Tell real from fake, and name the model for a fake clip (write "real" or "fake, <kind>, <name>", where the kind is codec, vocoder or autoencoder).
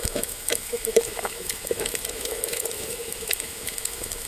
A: fake, autoencoder, DAC-VAE